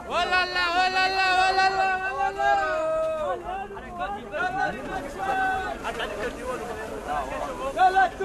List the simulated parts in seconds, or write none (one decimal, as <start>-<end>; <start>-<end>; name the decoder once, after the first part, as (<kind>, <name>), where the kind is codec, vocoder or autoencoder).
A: none